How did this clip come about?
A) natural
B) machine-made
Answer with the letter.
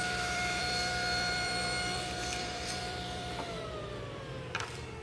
B